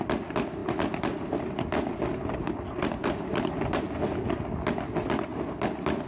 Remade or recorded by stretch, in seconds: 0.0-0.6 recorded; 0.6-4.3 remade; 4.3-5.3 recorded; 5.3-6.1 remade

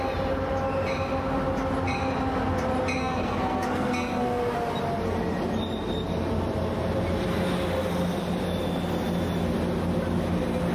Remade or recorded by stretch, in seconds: 0.0-3.0 recorded; 3.0-4.5 remade; 4.5-10.7 recorded